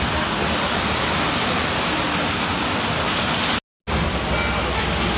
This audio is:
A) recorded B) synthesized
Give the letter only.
A